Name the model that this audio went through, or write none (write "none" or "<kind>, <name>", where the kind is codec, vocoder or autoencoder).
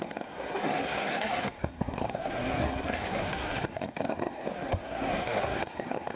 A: codec, SNAC